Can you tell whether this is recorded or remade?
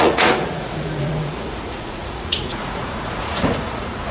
remade